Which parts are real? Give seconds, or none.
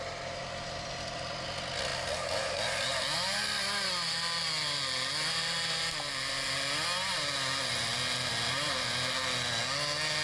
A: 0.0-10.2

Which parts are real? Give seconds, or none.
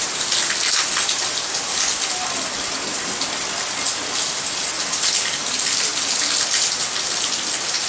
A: 0.0-7.9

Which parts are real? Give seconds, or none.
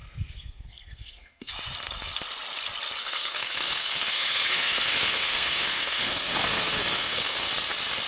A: 1.5-3.0; 7.5-8.1